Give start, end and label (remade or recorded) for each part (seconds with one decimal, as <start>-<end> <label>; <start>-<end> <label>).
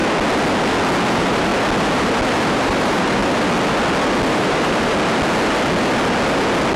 0.0-1.1 recorded; 1.1-1.5 remade; 1.5-2.5 recorded; 2.5-3.2 remade; 3.2-4.3 recorded; 4.3-4.9 remade; 4.9-6.8 recorded